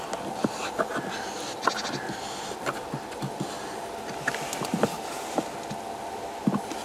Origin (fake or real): real